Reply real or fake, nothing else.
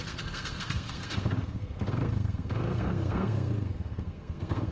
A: fake